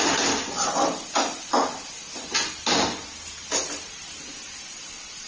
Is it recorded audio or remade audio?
recorded